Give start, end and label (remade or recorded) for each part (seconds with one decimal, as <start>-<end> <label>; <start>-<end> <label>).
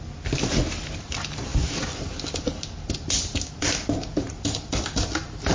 0.0-5.5 recorded